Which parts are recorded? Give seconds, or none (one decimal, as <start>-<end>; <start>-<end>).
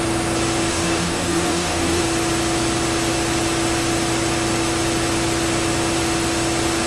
0.0-0.7; 2.0-6.9